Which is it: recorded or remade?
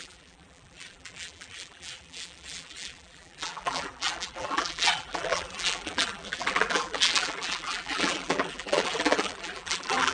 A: remade